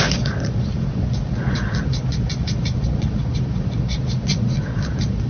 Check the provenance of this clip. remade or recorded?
remade